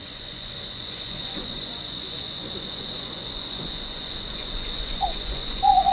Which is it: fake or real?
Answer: fake